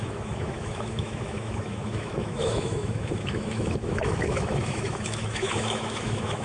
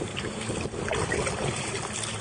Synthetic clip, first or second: first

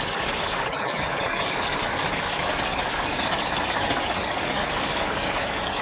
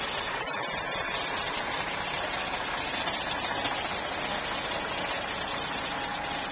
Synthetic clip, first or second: first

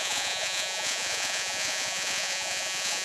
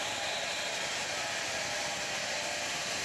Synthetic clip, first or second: first